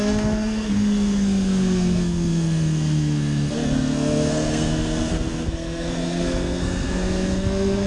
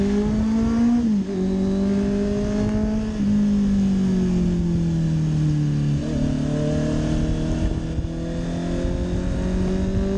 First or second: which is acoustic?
second